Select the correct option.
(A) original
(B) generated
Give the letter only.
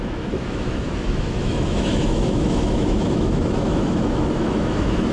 B